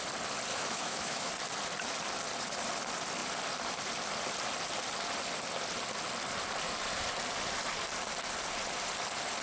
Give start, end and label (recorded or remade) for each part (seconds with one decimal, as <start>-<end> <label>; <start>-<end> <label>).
0.0-0.5 recorded; 0.5-1.3 remade; 1.3-9.4 recorded